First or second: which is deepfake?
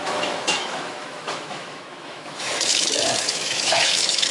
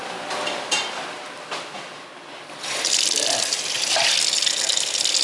first